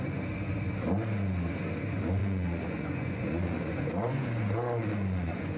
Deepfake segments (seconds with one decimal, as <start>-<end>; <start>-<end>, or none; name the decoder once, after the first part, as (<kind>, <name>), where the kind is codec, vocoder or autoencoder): 2.2-5.6 (vocoder, Vocos)